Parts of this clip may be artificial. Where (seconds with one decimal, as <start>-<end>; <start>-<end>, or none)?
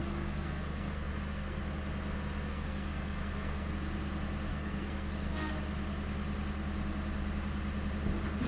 0.0-1.6; 2.5-3.7; 4.5-5.5